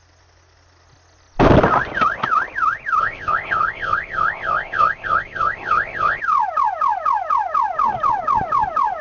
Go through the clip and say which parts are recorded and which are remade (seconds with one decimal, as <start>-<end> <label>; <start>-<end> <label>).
0.0-3.0 recorded; 3.0-6.2 remade; 6.2-9.0 recorded